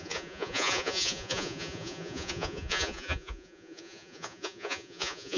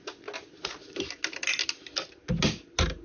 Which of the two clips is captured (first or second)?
second